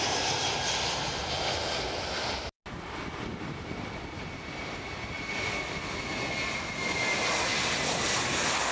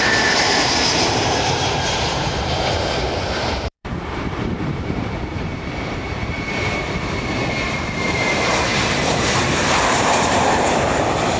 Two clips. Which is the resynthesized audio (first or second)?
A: second